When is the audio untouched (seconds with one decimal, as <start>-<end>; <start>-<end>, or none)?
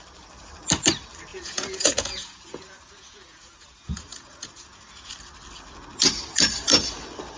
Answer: 0.0-1.3; 5.1-7.4